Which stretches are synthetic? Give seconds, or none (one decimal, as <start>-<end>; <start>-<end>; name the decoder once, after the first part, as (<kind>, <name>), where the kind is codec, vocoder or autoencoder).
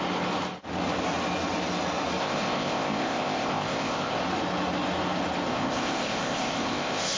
2.2-4.2 (codec, ZipCodec); 5.5-7.2